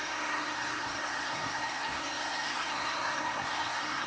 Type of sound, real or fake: fake